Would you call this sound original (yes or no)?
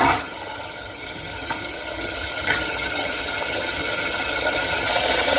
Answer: no